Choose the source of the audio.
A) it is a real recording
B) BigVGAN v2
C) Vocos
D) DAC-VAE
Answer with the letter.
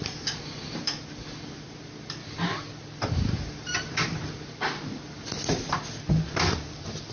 B